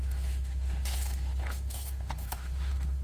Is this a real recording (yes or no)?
no